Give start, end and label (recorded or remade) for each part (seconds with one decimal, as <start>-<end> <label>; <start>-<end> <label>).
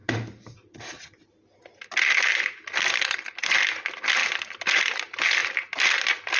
0.0-4.2 recorded; 4.2-5.0 remade; 5.0-5.4 recorded; 5.4-6.0 remade; 6.0-6.4 recorded